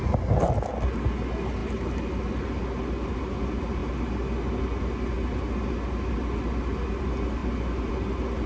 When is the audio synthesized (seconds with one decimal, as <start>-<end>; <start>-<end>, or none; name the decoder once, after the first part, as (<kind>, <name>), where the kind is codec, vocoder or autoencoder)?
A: none